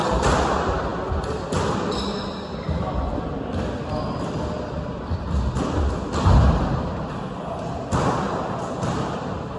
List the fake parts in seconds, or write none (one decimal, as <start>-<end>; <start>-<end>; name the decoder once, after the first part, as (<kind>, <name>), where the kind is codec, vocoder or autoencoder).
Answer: none